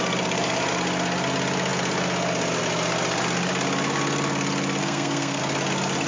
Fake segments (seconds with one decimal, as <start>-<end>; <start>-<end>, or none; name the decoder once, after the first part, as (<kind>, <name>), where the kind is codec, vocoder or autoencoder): 4.8-5.4 (codec, SNAC)